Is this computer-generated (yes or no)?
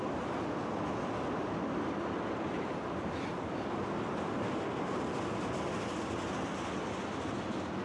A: no